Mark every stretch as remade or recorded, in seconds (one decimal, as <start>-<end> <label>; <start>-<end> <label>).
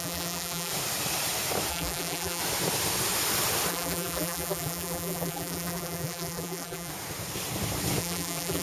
0.0-0.7 remade; 0.7-1.7 recorded; 1.7-2.4 remade; 2.4-3.7 recorded; 3.7-6.9 remade; 6.9-8.0 recorded; 8.0-8.6 remade